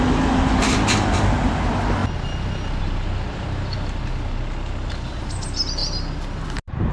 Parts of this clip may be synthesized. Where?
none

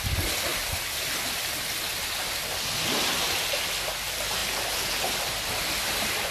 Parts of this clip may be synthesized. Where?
none

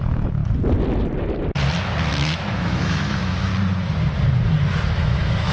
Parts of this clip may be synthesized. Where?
0.0-0.4 (autoencoder, DAC-VAE); 2.1-3.5; 4.9-5.5

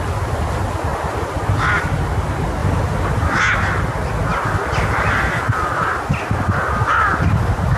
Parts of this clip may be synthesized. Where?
0.9-1.8 (vocoder, BigVGAN v2); 2.6-3.4; 4.3-7.0

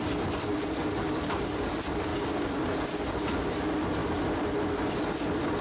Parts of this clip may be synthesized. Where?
none